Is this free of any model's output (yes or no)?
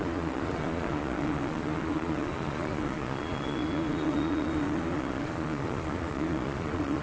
no